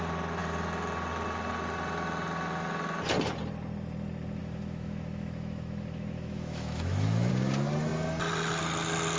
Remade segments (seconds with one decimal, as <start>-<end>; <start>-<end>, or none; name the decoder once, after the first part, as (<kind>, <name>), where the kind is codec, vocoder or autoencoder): 4.4-7.3 (autoencoder, DAC-VAE)